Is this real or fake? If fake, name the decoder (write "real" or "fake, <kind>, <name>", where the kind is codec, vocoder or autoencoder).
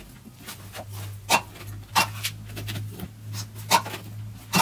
real